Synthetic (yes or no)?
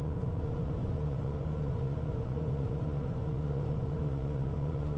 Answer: yes